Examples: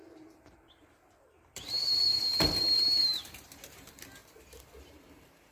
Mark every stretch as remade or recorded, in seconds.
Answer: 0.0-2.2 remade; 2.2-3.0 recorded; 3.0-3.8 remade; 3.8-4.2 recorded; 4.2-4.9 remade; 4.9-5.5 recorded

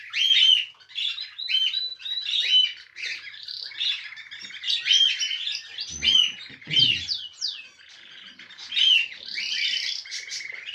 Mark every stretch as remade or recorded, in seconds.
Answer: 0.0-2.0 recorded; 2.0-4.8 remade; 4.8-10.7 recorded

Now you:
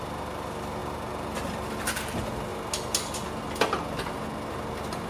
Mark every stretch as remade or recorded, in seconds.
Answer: 0.0-5.1 recorded

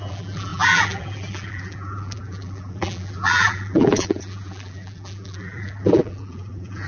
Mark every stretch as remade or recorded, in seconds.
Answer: 0.0-6.9 remade

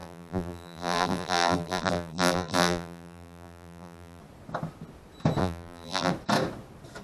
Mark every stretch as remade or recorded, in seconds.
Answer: 0.0-4.2 remade; 4.2-5.4 recorded; 5.4-6.1 remade; 6.1-7.0 recorded

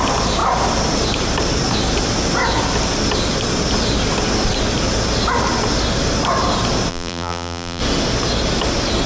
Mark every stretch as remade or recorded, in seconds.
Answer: 0.0-6.9 recorded; 6.9-7.8 remade; 7.8-9.1 recorded

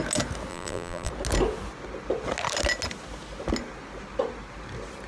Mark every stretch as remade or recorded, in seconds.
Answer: 0.0-0.5 recorded; 0.5-1.1 remade; 1.1-5.1 recorded

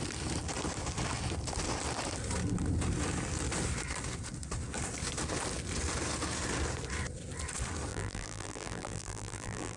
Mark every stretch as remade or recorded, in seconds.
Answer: 0.0-7.9 recorded; 7.9-9.8 remade